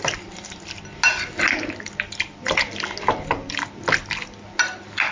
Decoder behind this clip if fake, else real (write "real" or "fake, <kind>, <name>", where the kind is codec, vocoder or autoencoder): real